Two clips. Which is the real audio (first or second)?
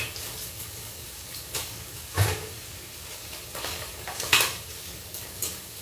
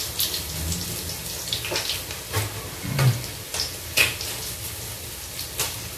second